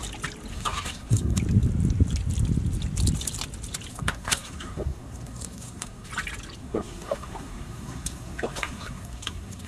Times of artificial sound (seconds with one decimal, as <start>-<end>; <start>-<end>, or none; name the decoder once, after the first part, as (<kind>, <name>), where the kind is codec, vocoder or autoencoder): 0.5-1.4 (codec, SNAC); 3.9-6.1; 6.6-9.7